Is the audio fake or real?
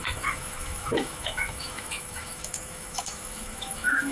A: fake